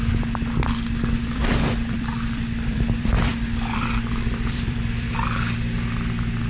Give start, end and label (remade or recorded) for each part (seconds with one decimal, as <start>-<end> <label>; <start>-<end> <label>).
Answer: 0.0-1.2 recorded; 1.2-5.1 remade; 5.1-6.5 recorded